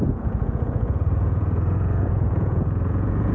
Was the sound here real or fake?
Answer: fake